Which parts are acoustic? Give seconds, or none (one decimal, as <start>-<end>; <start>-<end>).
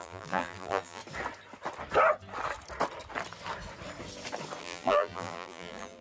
1.0-4.6